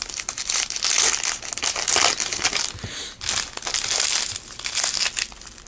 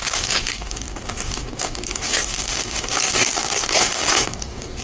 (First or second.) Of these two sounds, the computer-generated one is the second